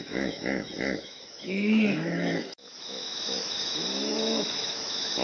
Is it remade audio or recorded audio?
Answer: remade